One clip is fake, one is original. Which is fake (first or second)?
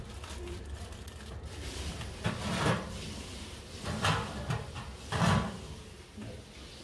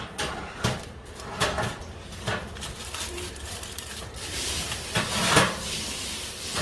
second